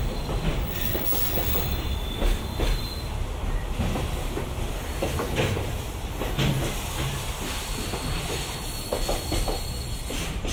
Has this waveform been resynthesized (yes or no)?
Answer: no